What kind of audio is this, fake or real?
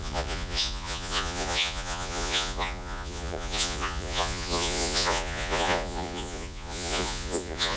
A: fake